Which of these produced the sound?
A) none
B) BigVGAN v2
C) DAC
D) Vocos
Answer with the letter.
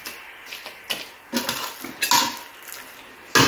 A